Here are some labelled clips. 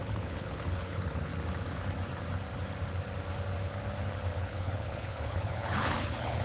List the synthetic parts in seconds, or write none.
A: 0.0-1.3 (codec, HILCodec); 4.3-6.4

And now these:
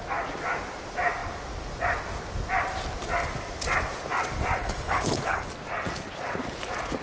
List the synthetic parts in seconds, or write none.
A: 4.6-5.5 (codec, HILCodec)

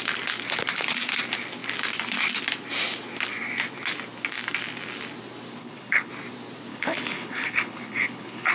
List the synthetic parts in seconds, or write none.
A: 5.6-6.1 (codec, HILCodec); 6.7-8.5

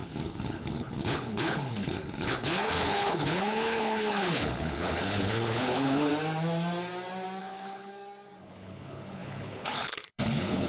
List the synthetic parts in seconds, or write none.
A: 0.0-6.1 (codec, HILCodec); 7.4-7.9; 8.4-10.7